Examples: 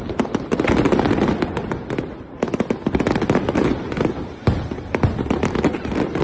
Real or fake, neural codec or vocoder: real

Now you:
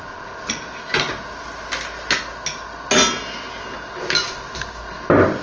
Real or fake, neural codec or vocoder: real